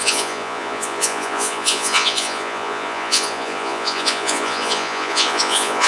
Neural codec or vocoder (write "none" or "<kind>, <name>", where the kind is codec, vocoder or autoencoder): vocoder, Vocos